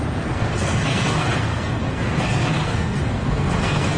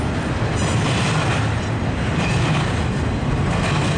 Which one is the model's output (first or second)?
first